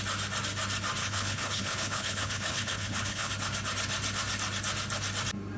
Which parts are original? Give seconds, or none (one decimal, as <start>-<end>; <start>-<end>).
0.0-1.0; 3.3-5.6